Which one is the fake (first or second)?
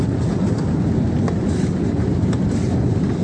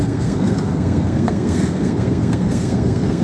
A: second